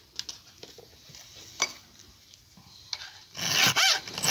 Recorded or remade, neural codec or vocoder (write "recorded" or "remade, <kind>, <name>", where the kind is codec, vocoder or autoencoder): recorded